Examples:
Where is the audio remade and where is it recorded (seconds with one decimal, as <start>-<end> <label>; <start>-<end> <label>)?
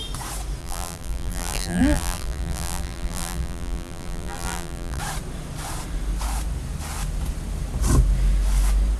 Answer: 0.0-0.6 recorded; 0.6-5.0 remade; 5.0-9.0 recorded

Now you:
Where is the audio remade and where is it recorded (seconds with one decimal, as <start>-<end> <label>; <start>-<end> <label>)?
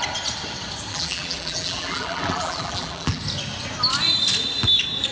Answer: 0.0-0.9 recorded; 0.9-3.2 remade; 3.2-5.1 recorded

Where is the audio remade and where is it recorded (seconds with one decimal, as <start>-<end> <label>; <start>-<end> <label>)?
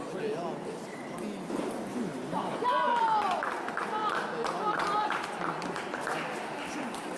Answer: 0.0-1.9 recorded; 1.9-3.0 remade; 3.0-7.2 recorded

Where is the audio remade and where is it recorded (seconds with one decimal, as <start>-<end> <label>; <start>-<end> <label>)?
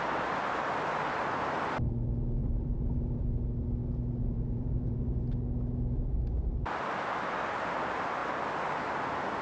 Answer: 0.0-2.4 recorded; 2.4-3.2 remade; 3.2-4.2 recorded; 4.2-5.2 remade; 5.2-9.4 recorded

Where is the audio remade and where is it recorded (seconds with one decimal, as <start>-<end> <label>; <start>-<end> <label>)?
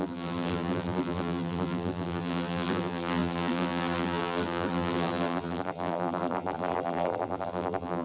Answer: 0.0-8.0 remade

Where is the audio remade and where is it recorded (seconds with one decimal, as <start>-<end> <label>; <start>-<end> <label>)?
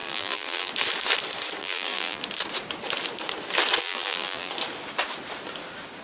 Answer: 0.0-0.7 remade; 0.7-1.6 recorded; 1.6-2.2 remade; 2.2-3.8 recorded; 3.8-4.5 remade; 4.5-6.0 recorded